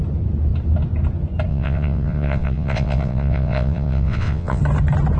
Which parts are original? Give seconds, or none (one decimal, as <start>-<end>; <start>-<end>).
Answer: 0.0-1.5; 4.6-5.2